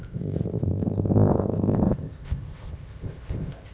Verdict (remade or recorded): remade